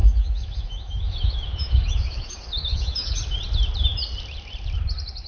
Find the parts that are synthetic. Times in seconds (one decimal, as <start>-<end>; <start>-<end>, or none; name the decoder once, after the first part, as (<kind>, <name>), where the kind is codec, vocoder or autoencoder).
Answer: 0.0-3.2 (autoencoder, DAC-VAE)